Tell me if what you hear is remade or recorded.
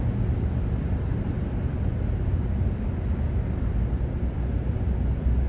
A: recorded